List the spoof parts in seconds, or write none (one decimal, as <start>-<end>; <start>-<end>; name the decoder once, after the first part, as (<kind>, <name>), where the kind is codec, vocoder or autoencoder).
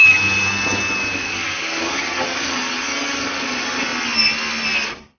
1.1-3.5 (codec, DAC)